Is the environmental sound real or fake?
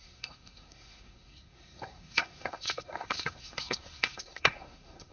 fake